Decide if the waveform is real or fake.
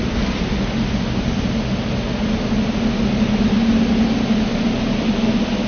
real